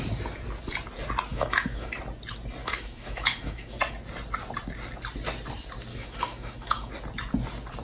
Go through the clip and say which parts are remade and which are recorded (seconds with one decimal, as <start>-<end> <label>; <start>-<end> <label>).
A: 0.0-1.3 recorded; 1.3-1.9 remade; 1.9-2.6 recorded; 2.6-3.8 remade; 3.8-5.9 recorded; 5.9-6.9 remade; 6.9-7.8 recorded